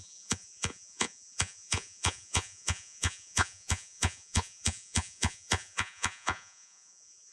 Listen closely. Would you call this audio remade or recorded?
remade